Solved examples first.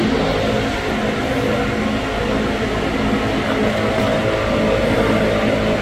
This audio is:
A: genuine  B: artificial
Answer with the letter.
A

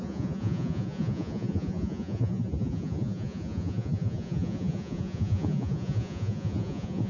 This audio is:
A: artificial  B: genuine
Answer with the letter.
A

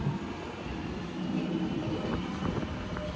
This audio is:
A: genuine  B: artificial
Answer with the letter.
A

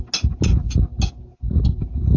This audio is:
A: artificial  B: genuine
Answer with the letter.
B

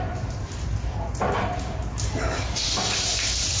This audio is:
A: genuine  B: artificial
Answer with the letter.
B